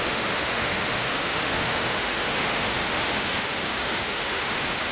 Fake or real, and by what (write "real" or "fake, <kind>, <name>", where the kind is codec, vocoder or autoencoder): fake, autoencoder, DAC-VAE